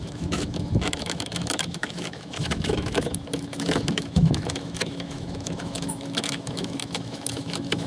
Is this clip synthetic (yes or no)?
yes